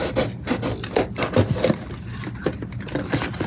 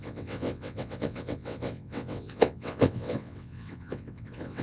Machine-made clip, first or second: second